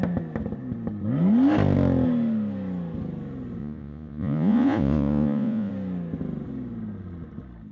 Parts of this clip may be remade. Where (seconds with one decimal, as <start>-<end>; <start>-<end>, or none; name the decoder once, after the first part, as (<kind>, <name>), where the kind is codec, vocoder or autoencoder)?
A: 3.6-5.7 (vocoder, Vocos)